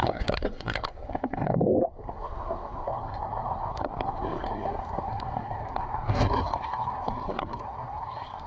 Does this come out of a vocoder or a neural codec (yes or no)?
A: yes